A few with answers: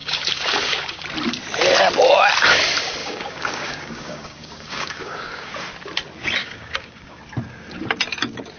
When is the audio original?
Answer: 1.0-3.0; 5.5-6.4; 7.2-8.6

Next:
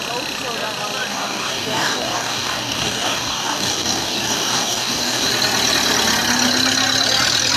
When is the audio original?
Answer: 0.0-1.1; 5.3-7.6

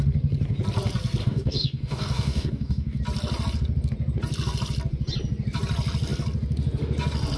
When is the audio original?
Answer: 0.0-1.2; 3.0-7.4

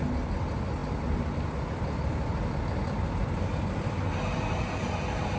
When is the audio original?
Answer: 0.0-5.4

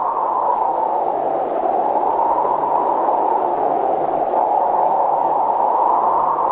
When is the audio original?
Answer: 0.0-0.5; 1.0-3.5; 5.5-6.5

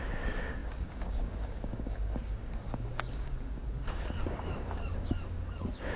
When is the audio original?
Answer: none

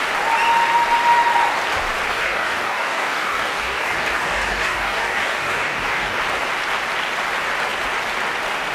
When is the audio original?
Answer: 0.0-2.1; 6.2-8.7

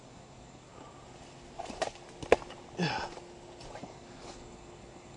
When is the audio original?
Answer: 0.7-3.8